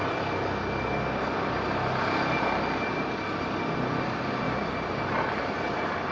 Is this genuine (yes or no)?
yes